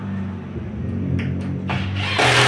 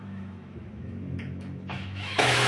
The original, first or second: first